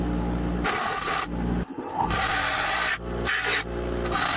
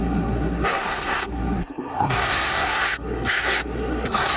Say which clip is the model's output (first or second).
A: second